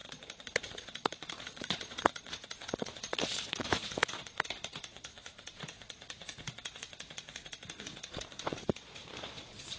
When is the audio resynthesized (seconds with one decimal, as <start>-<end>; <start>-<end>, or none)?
0.0-9.8